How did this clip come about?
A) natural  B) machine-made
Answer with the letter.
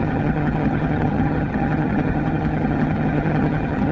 B